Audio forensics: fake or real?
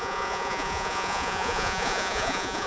fake